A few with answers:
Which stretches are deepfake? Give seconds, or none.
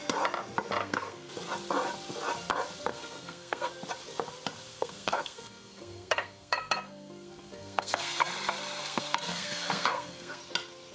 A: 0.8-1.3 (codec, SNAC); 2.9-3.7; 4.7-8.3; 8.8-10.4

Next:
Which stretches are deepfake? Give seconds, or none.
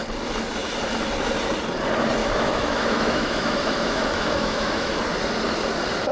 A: 2.2-5.0 (autoencoder, DAC-VAE)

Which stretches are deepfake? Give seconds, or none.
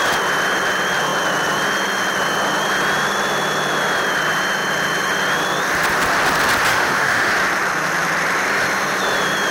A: 6.7-7.3 (autoencoder, DAC-VAE)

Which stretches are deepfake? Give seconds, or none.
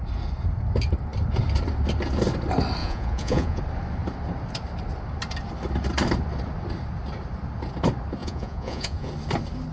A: 2.8-3.6 (vocoder, Vocos); 8.2-9.1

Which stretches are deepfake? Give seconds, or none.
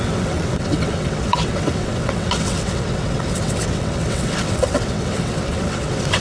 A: 0.0-6.2 (vocoder, WaveNeXt)